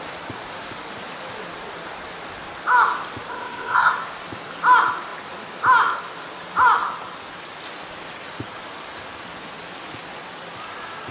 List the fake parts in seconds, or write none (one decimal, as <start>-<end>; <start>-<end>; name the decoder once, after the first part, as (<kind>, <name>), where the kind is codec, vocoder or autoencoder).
3.3-3.9 (codec, ZipCodec)